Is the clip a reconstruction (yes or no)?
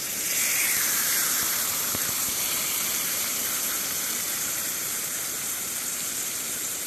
yes